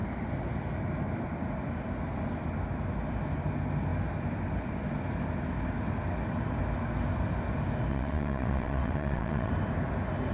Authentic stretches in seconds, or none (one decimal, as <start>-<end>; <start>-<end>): 0.0-7.9; 9.5-10.3